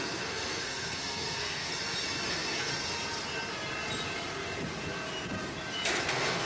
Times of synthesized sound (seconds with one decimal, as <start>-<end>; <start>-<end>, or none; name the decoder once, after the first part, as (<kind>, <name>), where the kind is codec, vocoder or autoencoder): 0.0-1.7 (codec, SNAC); 2.3-2.7; 6.1-6.5